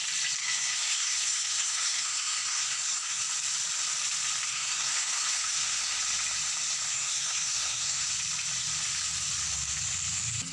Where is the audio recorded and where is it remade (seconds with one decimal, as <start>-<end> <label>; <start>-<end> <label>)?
0.0-0.4 recorded; 0.4-3.2 remade; 3.2-4.5 recorded; 4.5-6.0 remade; 6.0-6.9 recorded; 6.9-8.1 remade; 8.1-10.5 recorded